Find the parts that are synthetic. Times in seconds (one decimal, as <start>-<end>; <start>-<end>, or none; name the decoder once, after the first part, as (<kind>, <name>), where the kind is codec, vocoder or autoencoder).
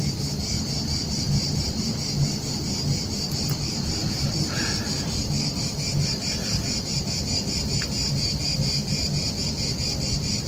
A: none